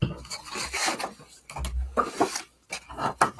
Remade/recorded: recorded